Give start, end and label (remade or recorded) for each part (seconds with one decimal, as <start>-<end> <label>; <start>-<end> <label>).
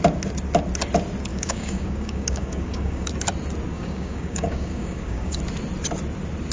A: 0.0-1.3 recorded; 1.3-3.1 remade; 3.1-3.7 recorded; 3.7-5.4 remade; 5.4-6.5 recorded